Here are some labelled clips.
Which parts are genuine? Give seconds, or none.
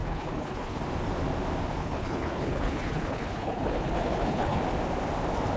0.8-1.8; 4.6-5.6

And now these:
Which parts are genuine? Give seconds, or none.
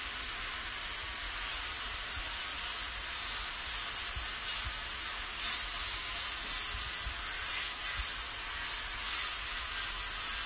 0.0-10.5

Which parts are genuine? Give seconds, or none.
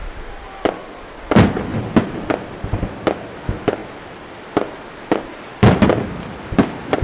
0.0-7.0